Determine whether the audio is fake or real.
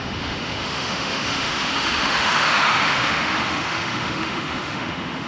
fake